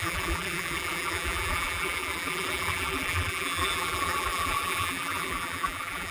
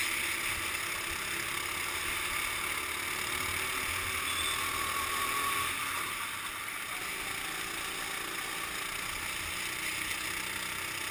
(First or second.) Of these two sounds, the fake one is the first